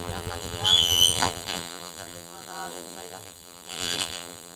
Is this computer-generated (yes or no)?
yes